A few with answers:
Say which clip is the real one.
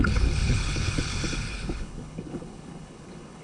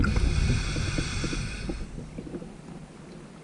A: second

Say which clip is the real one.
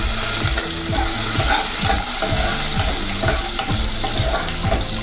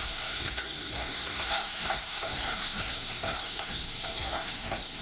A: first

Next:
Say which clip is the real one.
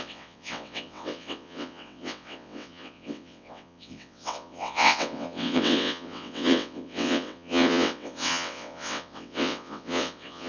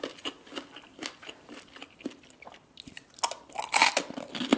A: second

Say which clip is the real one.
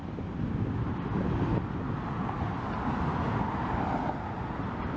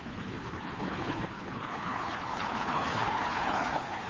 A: first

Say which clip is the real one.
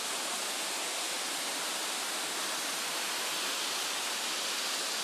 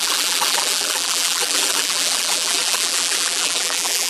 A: first